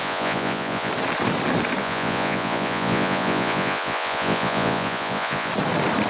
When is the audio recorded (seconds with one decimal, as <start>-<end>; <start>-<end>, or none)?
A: 0.9-1.8; 5.5-6.1